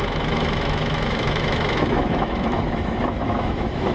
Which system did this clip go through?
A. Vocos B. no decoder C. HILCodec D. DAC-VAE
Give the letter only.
D